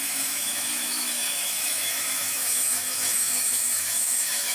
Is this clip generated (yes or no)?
yes